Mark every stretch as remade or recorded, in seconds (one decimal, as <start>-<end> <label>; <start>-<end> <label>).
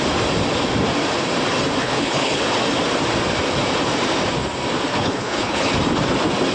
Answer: 0.0-1.8 recorded; 1.8-2.4 remade; 2.4-4.9 recorded; 4.9-5.7 remade; 5.7-6.5 recorded